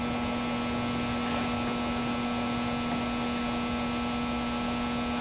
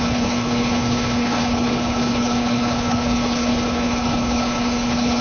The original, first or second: first